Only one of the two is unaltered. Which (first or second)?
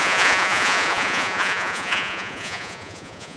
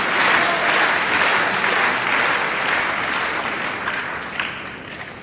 second